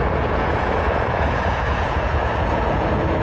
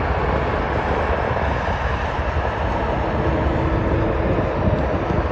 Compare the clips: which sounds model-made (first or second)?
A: first